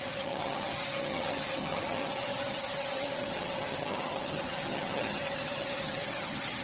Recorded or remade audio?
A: remade